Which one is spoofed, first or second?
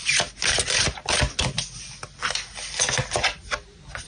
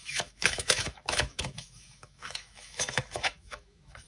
second